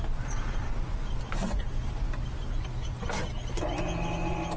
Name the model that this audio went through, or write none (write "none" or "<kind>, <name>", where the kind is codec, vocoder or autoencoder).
none